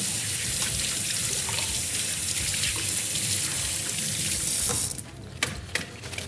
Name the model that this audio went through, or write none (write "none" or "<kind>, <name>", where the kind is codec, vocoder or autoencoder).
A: none